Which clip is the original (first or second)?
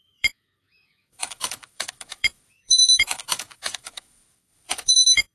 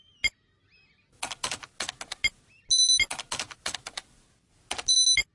second